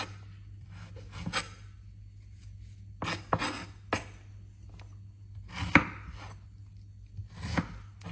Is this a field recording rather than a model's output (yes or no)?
yes